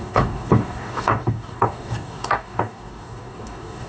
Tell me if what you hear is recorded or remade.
remade